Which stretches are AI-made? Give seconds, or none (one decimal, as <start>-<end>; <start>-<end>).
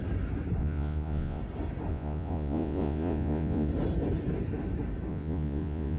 0.6-1.4; 1.9-3.7; 5.1-6.0